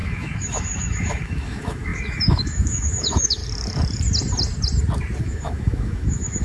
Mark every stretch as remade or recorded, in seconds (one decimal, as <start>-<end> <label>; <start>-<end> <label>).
0.0-3.4 remade; 3.4-5.2 recorded; 5.2-6.4 remade